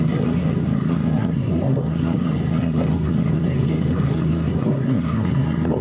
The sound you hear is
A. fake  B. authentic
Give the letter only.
A